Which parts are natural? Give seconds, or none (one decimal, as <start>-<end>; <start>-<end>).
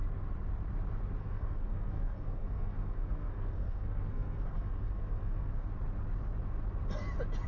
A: 0.0-1.2; 5.7-7.5